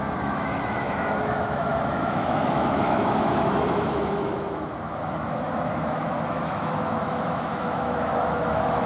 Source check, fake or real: fake